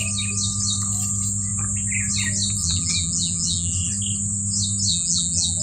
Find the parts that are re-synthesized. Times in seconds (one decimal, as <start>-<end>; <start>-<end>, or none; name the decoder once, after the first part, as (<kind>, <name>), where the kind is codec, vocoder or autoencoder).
2.6-3.9 (vocoder, BigVGAN v2); 4.9-5.6